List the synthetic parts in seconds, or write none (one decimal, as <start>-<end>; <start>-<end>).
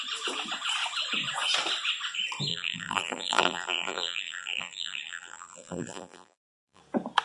2.5-6.8